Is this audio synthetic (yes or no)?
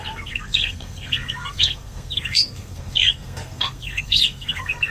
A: yes